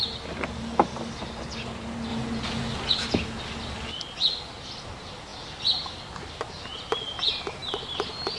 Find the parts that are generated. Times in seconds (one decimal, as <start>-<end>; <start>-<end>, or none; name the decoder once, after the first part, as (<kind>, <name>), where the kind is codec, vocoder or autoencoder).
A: none